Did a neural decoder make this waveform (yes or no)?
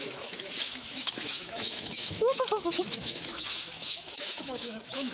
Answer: yes